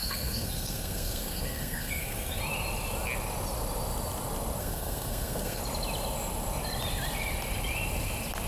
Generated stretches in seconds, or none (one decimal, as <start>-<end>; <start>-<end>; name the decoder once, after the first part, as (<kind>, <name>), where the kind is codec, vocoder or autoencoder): 0.0-2.4 (codec, SNAC); 4.6-5.6